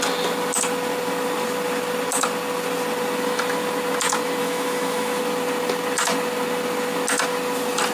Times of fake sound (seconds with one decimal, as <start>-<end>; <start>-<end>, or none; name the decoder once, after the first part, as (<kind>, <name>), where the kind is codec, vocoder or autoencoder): 4.4-5.2 (autoencoder, DAC-VAE)